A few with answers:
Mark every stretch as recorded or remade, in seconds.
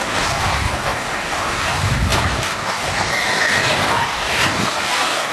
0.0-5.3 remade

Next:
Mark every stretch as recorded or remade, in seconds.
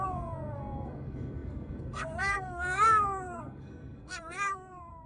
0.0-5.1 remade